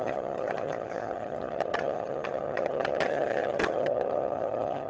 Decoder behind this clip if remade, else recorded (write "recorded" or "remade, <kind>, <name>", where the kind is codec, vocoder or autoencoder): remade, vocoder, HiFi-GAN